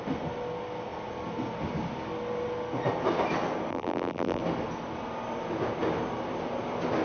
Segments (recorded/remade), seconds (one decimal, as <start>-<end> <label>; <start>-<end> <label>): 0.0-3.7 recorded; 3.7-4.4 remade; 4.4-7.0 recorded